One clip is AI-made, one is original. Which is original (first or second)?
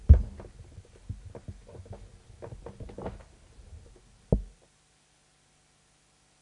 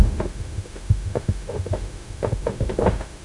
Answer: first